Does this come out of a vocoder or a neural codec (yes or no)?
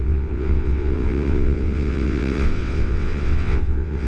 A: yes